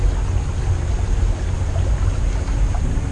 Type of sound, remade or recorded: recorded